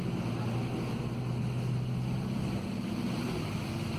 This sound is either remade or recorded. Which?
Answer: recorded